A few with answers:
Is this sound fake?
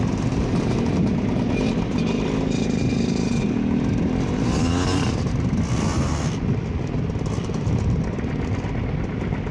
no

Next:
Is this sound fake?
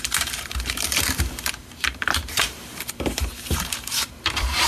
yes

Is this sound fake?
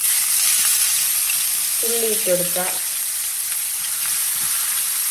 no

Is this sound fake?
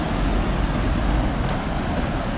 no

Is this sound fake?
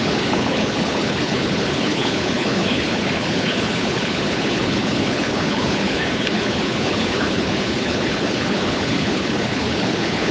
yes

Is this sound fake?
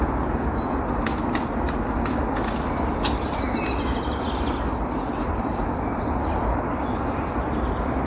no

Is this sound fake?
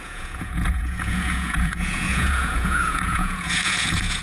yes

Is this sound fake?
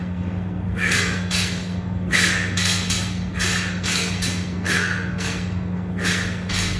yes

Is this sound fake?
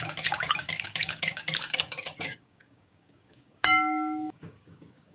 yes